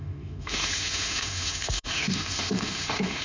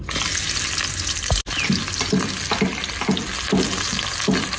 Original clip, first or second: second